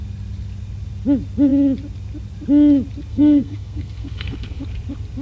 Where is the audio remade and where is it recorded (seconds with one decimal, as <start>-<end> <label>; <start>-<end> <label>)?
0.0-3.1 recorded; 3.1-4.6 remade; 4.6-5.2 recorded

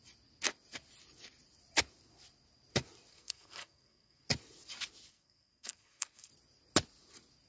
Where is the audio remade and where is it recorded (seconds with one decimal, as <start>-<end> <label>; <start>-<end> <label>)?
0.0-3.1 recorded; 3.1-4.2 remade; 4.2-5.1 recorded; 5.1-6.3 remade; 6.3-7.5 recorded

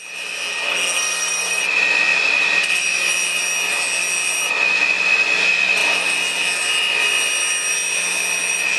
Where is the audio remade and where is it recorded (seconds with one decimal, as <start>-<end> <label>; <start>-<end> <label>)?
0.0-0.7 recorded; 0.7-1.6 remade; 1.6-8.8 recorded

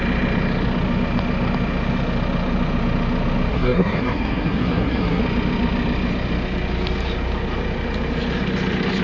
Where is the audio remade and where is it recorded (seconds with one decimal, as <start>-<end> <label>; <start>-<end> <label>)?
0.0-3.5 recorded; 3.5-5.2 remade; 5.2-9.0 recorded

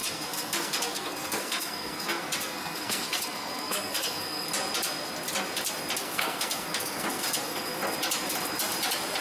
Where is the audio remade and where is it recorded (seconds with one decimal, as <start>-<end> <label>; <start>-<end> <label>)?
0.0-4.5 remade; 4.5-6.0 recorded; 6.0-7.8 remade; 7.8-9.2 recorded